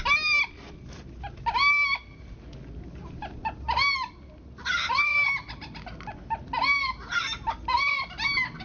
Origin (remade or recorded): recorded